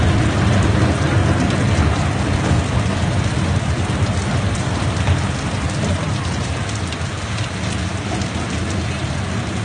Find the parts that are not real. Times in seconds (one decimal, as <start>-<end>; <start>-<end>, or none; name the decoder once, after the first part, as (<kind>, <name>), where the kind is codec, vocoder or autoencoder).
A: none